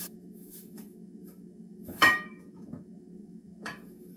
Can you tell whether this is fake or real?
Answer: fake